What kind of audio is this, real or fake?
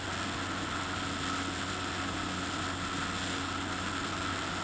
real